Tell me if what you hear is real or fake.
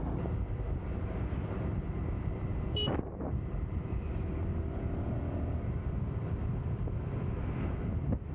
real